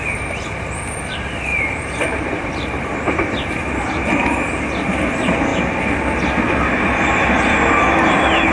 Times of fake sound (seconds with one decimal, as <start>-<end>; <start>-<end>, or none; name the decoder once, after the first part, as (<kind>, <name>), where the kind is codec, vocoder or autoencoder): 1.5-3.8 (vocoder, BigVGAN v2)

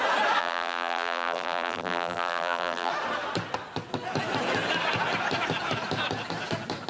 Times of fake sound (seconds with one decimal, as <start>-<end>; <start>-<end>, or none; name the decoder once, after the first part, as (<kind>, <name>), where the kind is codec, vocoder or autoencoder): 0.4-2.9 (vocoder, BigVGAN v2)

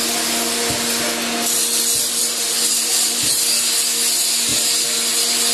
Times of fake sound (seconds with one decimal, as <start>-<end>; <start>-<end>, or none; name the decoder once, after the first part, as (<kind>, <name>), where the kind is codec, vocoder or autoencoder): 2.2-3.4 (vocoder, BigVGAN v2); 4.5-5.1

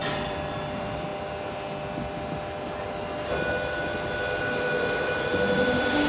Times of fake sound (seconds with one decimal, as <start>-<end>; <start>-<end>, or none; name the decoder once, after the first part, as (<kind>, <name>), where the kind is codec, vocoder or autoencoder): 0.0-1.1 (vocoder, BigVGAN v2); 4.4-6.1

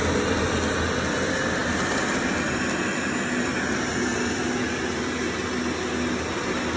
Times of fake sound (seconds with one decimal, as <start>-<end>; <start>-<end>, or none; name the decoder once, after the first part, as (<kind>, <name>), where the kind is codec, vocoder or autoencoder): 1.6-2.1 (vocoder, BigVGAN v2)

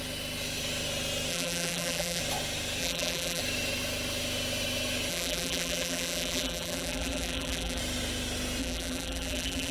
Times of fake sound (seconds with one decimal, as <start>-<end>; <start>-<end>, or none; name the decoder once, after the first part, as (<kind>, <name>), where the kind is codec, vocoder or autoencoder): 1.3-2.2 (vocoder, BigVGAN v2); 2.8-3.4; 5.1-7.8; 8.6-9.7

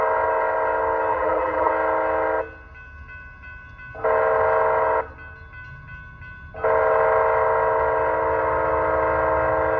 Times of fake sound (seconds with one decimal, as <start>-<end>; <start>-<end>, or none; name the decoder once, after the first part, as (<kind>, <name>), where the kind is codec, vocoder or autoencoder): 1.1-1.7 (vocoder, BigVGAN v2)

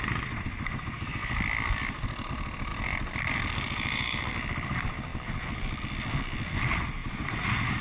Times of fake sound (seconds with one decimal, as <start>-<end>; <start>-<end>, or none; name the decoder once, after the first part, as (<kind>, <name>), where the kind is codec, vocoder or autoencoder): 2.7-4.3 (vocoder, BigVGAN v2); 7.0-7.8